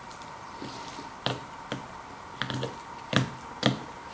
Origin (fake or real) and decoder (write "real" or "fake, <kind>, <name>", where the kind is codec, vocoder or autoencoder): real